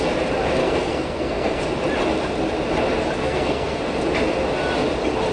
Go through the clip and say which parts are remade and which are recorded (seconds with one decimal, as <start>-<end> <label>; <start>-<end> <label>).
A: 0.0-0.6 recorded; 0.6-1.6 remade; 1.6-3.2 recorded; 3.2-3.8 remade; 3.8-5.3 recorded